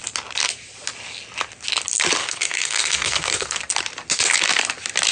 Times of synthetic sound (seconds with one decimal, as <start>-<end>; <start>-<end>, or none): 2.2-3.6